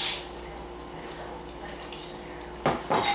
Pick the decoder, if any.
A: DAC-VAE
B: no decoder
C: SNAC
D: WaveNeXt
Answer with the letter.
B